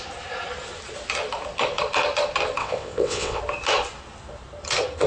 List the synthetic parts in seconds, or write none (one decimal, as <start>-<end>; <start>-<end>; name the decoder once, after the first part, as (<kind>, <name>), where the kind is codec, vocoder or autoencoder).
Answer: 2.6-3.4 (vocoder, WaveNeXt)